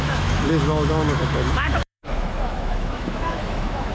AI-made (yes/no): yes